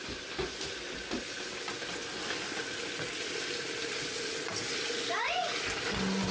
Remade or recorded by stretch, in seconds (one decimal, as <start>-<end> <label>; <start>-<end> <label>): 0.0-6.3 recorded